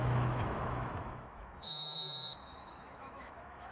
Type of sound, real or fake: fake